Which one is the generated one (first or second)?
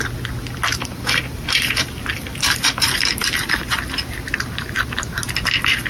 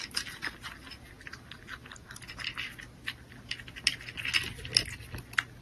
first